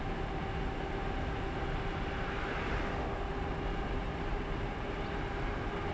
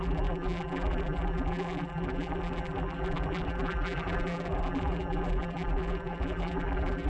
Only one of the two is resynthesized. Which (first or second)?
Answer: second